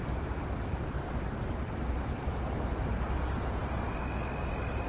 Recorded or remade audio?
recorded